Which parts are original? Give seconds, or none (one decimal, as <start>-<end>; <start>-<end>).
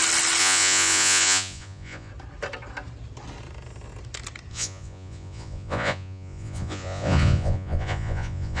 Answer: 0.0-0.4; 2.1-4.5